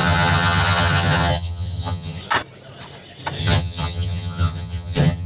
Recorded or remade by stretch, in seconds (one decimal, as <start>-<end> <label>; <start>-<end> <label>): 0.0-2.2 remade; 2.2-3.4 recorded; 3.4-5.3 remade